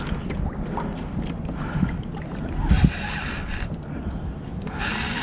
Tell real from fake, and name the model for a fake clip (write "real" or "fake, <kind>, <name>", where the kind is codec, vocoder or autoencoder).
real